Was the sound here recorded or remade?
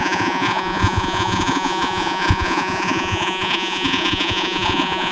remade